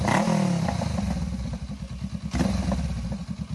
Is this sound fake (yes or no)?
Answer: no